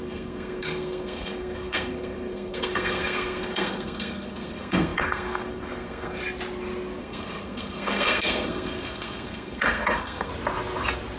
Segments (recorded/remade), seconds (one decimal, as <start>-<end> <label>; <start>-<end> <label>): 0.0-6.2 remade; 6.2-7.0 recorded; 7.0-10.3 remade; 10.3-11.2 recorded